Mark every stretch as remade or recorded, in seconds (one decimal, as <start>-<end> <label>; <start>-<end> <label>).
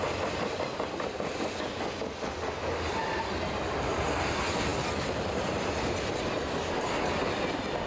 0.0-7.9 recorded